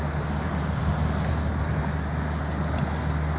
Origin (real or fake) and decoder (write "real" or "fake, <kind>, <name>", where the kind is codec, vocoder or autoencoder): real